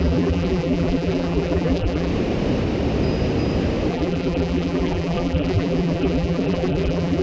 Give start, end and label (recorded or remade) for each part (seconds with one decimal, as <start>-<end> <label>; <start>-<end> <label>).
0.0-2.1 remade; 2.1-3.9 recorded; 3.9-7.2 remade

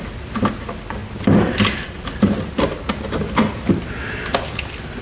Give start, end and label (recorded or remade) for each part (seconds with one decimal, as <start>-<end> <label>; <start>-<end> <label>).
0.0-5.0 recorded